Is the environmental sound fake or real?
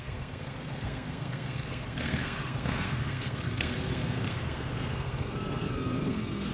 fake